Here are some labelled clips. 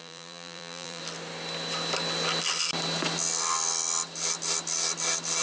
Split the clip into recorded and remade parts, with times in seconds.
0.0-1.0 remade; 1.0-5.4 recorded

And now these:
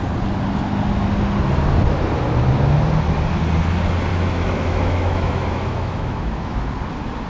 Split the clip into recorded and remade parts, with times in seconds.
0.0-4.1 recorded; 4.1-6.7 remade; 6.7-7.3 recorded

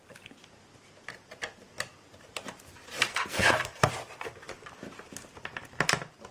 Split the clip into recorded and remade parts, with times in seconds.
0.0-3.1 recorded; 3.1-3.9 remade; 3.9-6.3 recorded